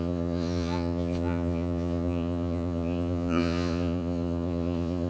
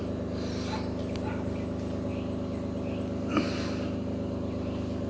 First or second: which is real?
second